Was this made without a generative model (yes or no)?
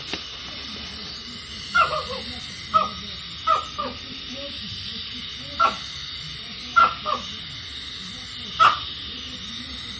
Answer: yes